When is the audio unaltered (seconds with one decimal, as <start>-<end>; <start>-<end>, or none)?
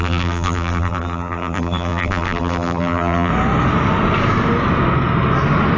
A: 3.3-5.8